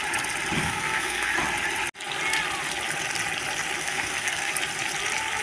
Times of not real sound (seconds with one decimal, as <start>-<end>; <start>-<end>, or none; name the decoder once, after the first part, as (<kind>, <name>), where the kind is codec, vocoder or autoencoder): 0.6-1.3 (codec, SNAC); 3.8-4.5